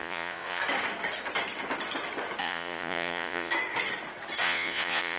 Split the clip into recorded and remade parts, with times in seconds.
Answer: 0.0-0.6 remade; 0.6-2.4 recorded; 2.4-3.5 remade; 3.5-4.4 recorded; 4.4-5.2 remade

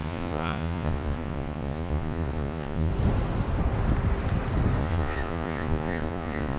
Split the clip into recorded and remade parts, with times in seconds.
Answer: 0.0-2.9 remade; 2.9-4.8 recorded; 4.8-6.6 remade